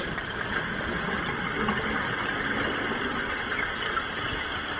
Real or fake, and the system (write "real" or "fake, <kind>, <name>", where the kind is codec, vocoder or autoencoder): real